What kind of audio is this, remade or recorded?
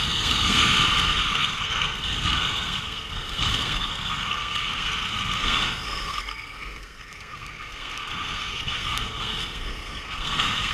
remade